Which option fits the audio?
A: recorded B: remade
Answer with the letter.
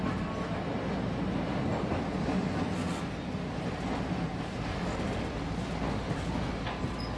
A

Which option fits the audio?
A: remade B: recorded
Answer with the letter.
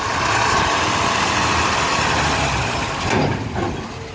B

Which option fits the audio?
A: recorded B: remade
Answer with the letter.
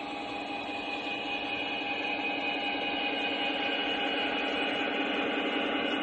A